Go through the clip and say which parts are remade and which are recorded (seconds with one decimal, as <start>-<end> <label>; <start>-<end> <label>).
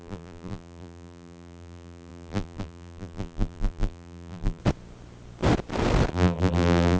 0.0-4.6 remade; 4.6-6.1 recorded; 6.1-7.0 remade